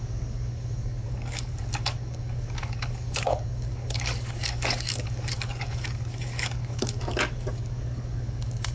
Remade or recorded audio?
remade